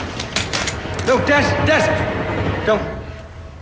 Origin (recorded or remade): recorded